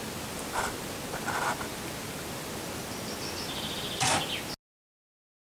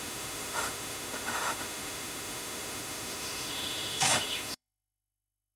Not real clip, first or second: second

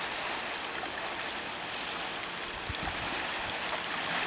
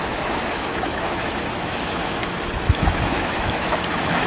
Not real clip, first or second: second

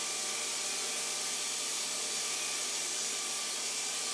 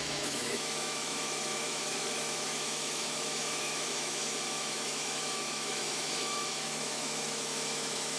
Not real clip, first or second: second